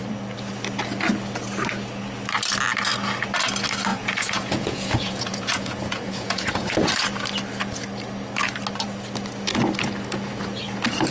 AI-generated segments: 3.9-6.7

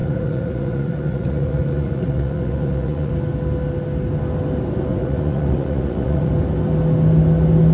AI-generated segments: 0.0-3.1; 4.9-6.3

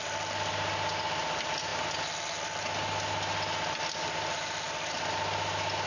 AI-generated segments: none